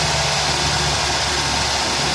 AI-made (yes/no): no